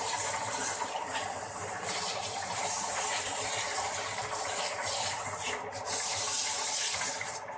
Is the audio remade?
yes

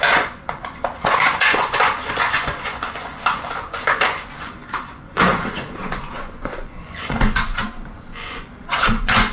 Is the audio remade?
yes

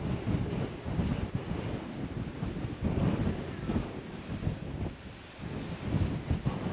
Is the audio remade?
no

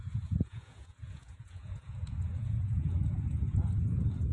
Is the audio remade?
yes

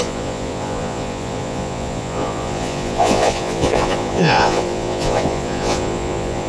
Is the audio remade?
yes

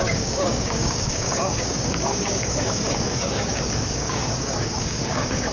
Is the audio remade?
yes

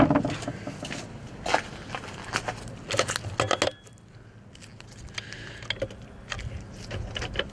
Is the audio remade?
no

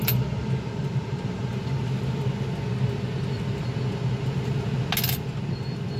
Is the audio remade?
no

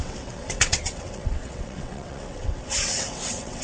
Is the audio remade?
yes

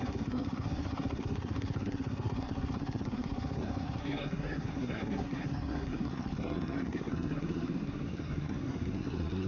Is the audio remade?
yes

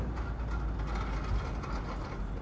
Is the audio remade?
no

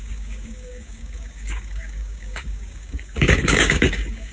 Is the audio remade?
yes